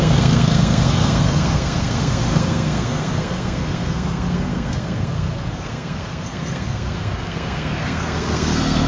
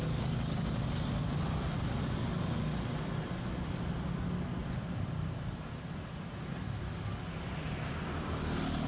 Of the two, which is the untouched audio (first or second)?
second